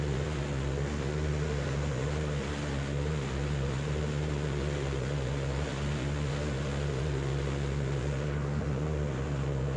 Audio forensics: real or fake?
fake